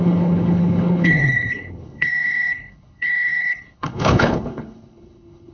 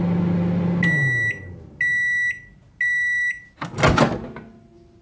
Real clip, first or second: second